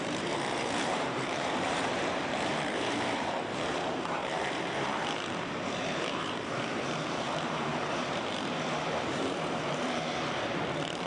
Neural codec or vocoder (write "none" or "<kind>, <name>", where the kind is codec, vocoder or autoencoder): vocoder, BigVGAN v2